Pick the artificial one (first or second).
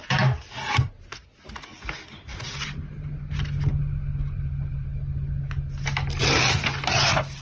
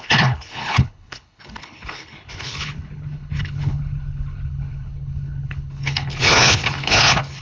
second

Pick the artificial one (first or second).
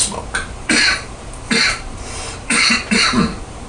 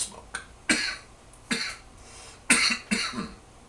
first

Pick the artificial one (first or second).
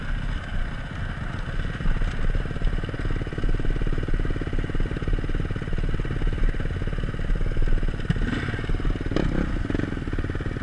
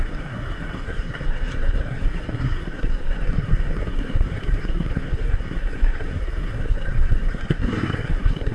second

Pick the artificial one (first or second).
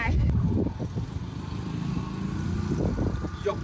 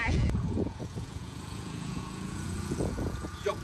second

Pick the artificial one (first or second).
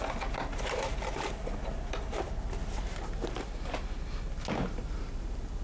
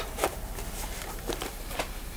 second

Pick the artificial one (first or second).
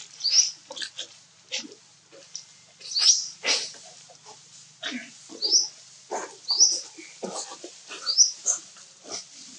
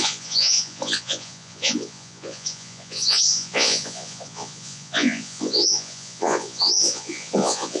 second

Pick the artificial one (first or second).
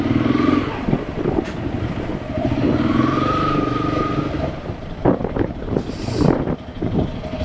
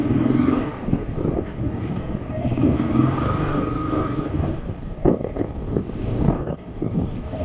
second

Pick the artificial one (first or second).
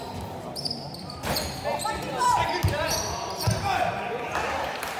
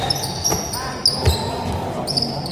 first